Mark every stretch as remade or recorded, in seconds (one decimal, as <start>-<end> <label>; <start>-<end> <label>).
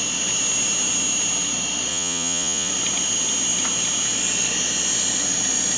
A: 0.0-1.9 recorded; 1.9-2.7 remade; 2.7-5.8 recorded